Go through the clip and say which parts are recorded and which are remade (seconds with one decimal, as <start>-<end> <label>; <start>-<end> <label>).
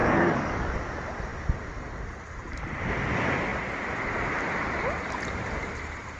0.0-0.7 remade; 0.7-6.2 recorded